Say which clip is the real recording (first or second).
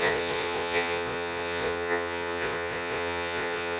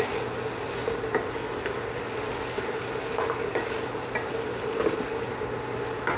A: second